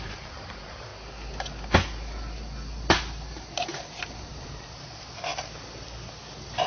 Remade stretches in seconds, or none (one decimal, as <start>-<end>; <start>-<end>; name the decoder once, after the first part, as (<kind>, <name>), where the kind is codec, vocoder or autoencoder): 0.0-0.9 (vocoder, BigVGAN v2); 4.2-5.3